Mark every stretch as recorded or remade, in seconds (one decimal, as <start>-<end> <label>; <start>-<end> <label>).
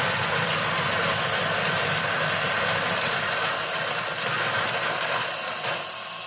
0.0-6.3 recorded